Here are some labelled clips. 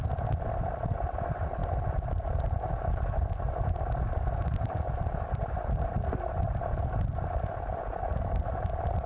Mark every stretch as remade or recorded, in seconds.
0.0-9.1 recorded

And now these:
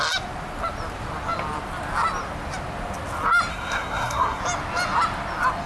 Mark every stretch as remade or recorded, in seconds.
0.0-3.5 recorded; 3.5-4.4 remade; 4.4-5.7 recorded

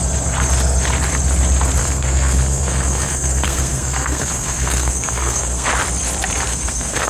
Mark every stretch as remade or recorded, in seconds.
0.0-1.8 recorded; 1.8-5.7 remade; 5.7-6.5 recorded; 6.5-7.1 remade

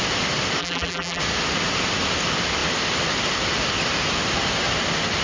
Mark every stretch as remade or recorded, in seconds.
0.0-0.6 recorded; 0.6-1.2 remade; 1.2-5.2 recorded

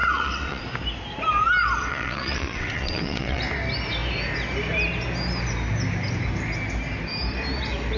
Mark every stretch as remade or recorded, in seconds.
0.0-0.6 remade; 0.6-1.9 recorded; 1.9-3.4 remade; 3.4-8.0 recorded

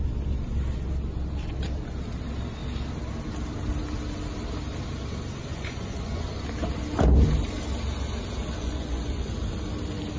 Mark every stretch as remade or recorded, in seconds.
0.0-5.5 recorded; 5.5-6.4 remade; 6.4-8.6 recorded; 8.6-9.3 remade; 9.3-10.2 recorded

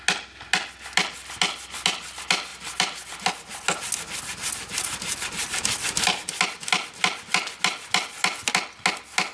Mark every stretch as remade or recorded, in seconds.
0.0-9.3 recorded